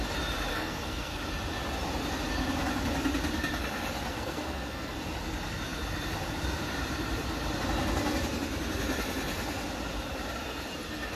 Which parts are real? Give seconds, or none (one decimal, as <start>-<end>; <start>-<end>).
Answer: 0.0-0.5; 1.2-4.1; 4.9-11.2